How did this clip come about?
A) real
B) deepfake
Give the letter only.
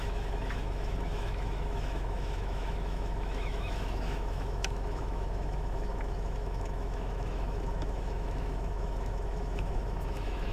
B